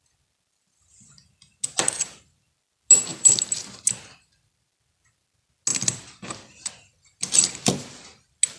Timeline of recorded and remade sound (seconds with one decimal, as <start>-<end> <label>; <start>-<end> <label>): 0.0-3.1 recorded; 3.1-3.8 remade; 3.8-5.7 recorded; 5.7-6.7 remade; 6.7-8.6 recorded